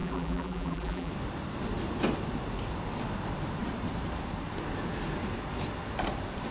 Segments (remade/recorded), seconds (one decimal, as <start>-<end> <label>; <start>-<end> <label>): 0.0-1.1 remade; 1.1-6.5 recorded